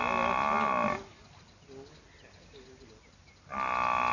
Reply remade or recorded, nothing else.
recorded